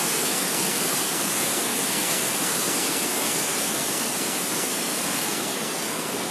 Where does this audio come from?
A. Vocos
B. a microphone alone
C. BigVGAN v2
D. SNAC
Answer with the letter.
D